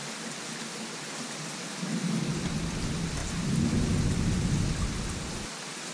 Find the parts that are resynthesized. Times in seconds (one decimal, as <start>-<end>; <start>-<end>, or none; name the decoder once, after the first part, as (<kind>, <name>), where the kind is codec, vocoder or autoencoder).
none